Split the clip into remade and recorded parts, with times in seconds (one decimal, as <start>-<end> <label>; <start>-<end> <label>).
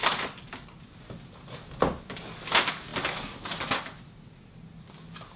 0.0-5.4 recorded